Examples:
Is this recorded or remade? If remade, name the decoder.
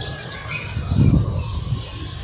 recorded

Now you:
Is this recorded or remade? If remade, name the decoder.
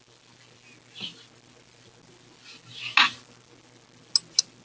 recorded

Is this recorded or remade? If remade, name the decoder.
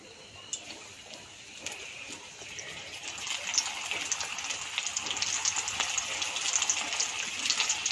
recorded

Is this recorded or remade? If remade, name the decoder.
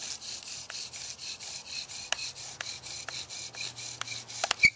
recorded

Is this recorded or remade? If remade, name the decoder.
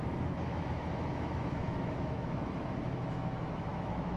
remade, autoencoder, DAC-VAE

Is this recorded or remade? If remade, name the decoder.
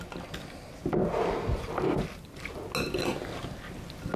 recorded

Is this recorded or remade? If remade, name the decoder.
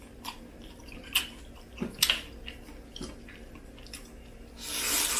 recorded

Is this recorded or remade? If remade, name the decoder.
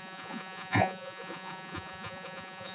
remade, vocoder, Vocos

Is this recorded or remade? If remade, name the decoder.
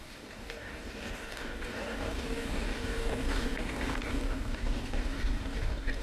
remade, codec, DAC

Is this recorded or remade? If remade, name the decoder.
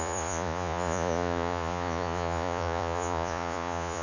remade, vocoder, Vocos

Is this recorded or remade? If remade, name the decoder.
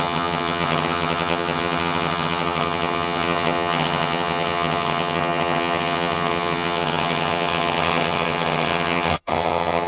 remade, vocoder, HiFi-GAN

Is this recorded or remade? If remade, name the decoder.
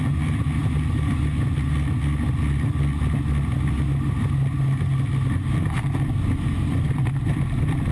recorded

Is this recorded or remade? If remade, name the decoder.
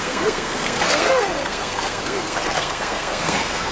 remade, codec, SNAC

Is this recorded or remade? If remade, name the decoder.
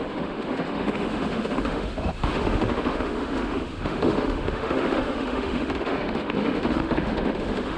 remade, autoencoder, DAC-VAE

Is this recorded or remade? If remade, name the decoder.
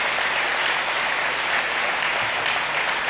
recorded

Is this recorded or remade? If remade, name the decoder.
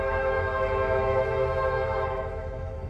remade, autoencoder, DAC-VAE